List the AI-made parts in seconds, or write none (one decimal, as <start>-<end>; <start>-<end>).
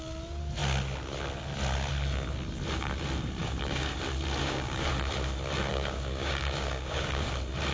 3.4-4.0; 4.4-4.9; 5.7-7.3